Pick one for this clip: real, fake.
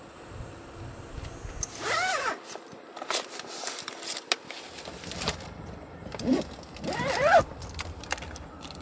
real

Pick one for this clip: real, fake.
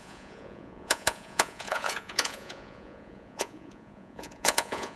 fake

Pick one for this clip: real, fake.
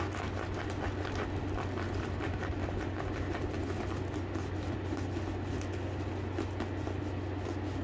real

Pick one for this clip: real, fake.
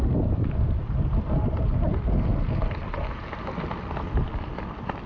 real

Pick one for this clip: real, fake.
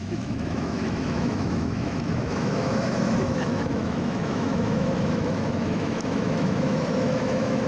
fake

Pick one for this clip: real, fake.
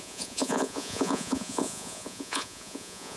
fake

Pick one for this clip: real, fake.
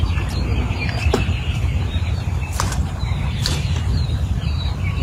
fake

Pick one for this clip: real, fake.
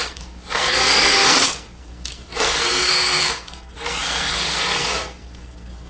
fake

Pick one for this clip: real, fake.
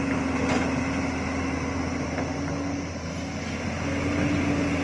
real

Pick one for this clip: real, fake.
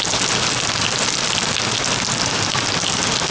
real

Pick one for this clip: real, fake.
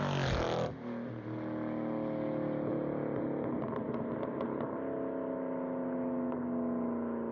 real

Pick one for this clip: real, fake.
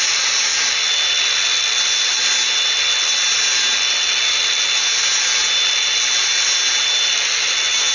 real